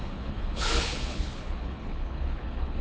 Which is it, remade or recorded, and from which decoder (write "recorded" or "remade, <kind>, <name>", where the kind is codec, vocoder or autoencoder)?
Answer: remade, codec, HILCodec